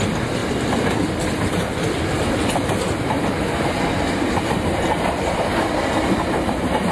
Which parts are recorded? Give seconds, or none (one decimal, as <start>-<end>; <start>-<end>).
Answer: 0.0-6.9